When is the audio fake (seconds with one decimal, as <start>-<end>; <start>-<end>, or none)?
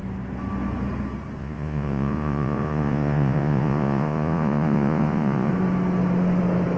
1.4-5.5